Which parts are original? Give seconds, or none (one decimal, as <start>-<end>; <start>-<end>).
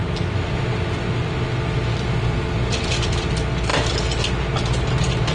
3.2-3.7; 4.3-5.3